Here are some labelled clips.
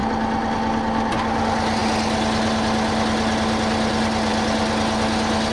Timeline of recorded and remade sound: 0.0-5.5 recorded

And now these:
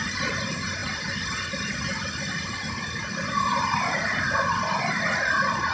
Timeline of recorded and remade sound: 0.0-5.7 recorded

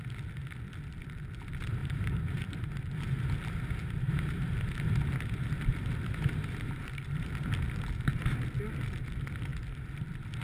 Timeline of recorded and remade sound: 0.0-1.8 recorded; 1.8-2.7 remade; 2.7-3.8 recorded; 3.8-4.6 remade; 4.6-5.7 recorded; 5.7-7.3 remade; 7.3-10.4 recorded

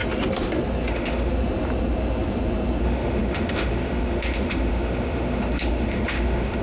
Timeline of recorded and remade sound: 0.0-0.9 recorded; 0.9-1.3 remade; 1.3-2.8 recorded; 2.8-6.6 remade

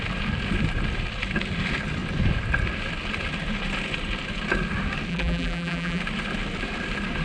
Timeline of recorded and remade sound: 0.0-5.1 recorded; 5.1-6.0 remade; 6.0-7.2 recorded

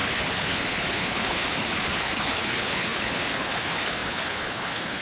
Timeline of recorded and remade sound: 0.0-5.0 remade

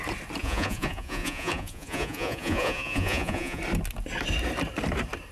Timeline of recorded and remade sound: 0.0-0.4 recorded; 0.4-3.6 remade; 3.6-5.3 recorded